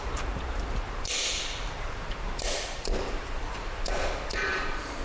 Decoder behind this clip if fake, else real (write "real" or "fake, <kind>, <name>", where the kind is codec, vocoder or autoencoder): fake, vocoder, BigVGAN v2